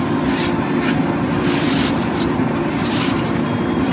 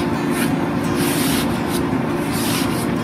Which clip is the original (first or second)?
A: second